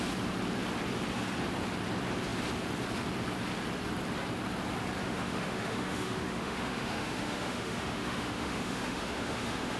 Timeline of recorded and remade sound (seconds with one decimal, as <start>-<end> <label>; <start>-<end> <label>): 0.0-5.0 recorded; 5.0-9.8 remade